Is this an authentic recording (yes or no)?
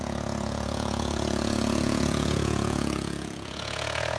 no